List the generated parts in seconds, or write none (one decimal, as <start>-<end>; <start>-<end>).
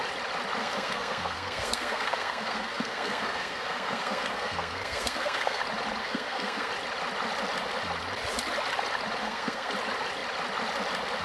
0.6-5.6; 6.0-6.7; 9.2-9.7